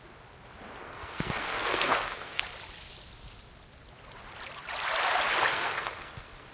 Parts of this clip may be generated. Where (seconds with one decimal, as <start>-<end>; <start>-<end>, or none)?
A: 0.8-2.4; 5.5-6.5